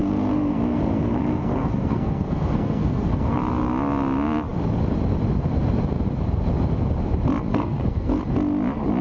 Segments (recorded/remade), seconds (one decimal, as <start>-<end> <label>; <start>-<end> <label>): 0.0-3.4 remade; 3.4-7.5 recorded; 7.5-8.2 remade; 8.2-9.0 recorded